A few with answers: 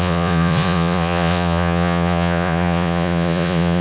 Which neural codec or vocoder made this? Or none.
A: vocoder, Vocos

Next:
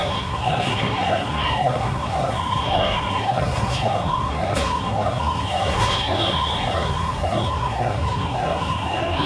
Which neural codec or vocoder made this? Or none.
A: codec, SNAC